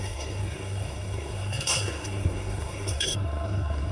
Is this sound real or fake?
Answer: fake